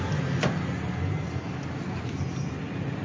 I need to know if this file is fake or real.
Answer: real